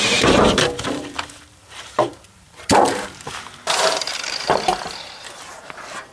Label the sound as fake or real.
fake